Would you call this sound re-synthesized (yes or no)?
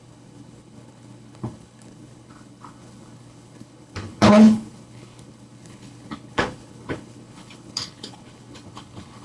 yes